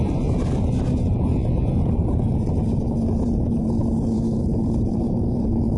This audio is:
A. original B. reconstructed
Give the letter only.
B